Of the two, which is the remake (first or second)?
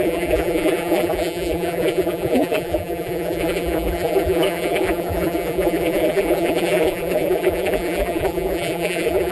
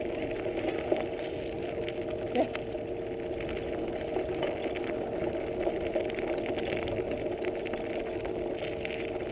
first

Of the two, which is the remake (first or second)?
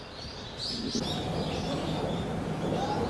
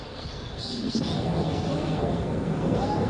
second